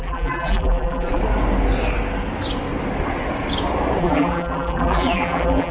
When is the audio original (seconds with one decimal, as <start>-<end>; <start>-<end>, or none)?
1.2-4.0